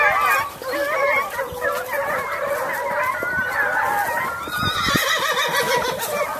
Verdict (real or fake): real